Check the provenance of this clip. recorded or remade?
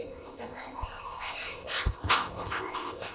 remade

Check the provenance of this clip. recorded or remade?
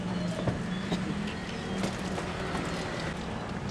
recorded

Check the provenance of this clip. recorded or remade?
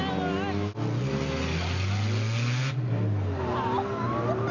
recorded